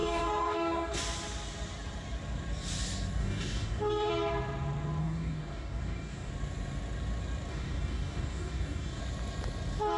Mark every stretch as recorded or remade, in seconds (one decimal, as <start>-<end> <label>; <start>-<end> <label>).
0.0-1.0 remade; 1.0-3.2 recorded; 3.2-4.1 remade; 4.1-5.0 recorded; 5.0-6.3 remade; 6.3-7.5 recorded; 7.5-9.0 remade; 9.0-10.0 recorded